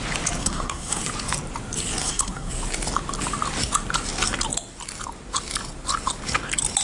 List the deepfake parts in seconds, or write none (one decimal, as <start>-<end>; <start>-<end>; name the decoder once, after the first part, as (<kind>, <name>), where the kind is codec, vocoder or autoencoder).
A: 0.4-1.0 (codec, SNAC); 2.0-2.5